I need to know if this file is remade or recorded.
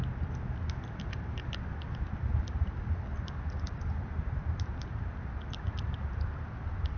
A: recorded